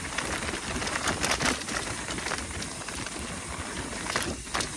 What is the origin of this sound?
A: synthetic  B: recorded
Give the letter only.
B